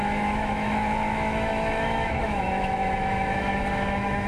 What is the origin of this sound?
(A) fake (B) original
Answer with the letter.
A